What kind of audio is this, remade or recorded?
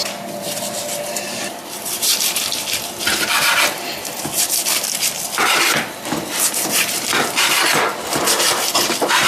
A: remade